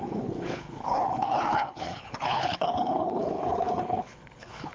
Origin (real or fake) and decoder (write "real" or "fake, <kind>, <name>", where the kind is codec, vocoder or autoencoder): fake, codec, HILCodec